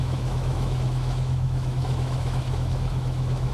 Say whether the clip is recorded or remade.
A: remade